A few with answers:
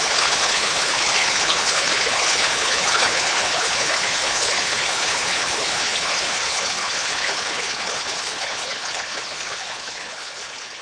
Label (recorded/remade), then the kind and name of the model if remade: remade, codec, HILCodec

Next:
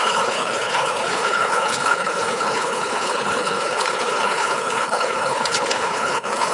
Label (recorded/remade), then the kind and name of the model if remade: remade, codec, HILCodec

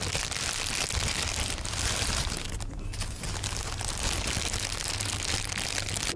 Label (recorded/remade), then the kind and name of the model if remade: recorded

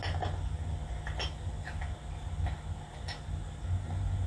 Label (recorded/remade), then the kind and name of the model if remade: recorded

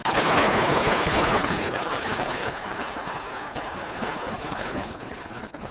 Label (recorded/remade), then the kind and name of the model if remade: remade, codec, HILCodec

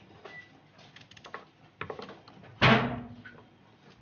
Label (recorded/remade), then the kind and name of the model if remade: recorded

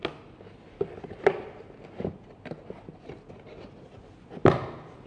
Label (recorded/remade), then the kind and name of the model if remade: recorded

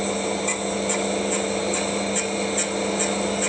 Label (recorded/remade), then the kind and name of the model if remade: recorded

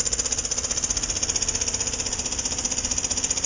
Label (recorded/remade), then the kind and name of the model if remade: recorded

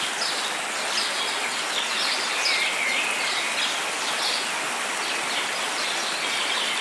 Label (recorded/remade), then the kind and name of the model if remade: recorded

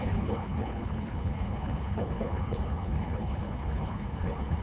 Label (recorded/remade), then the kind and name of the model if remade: remade, codec, HILCodec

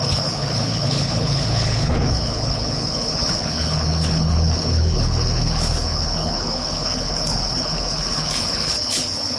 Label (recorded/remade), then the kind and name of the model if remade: remade, codec, HILCodec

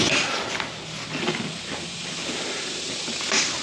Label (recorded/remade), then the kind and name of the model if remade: recorded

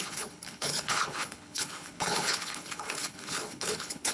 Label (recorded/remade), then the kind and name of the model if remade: remade, codec, HILCodec